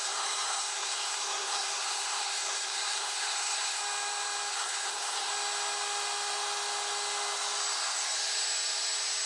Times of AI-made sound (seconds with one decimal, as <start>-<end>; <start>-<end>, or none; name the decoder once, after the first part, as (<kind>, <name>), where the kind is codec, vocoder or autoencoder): 0.0-3.8 (codec, SNAC); 4.5-5.3